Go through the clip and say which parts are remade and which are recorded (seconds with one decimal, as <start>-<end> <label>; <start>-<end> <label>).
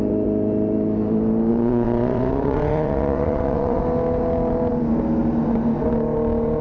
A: 0.0-1.5 recorded; 1.5-3.8 remade; 3.8-6.6 recorded